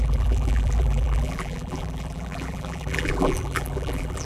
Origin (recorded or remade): remade